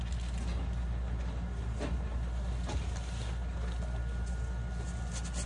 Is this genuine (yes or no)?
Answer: yes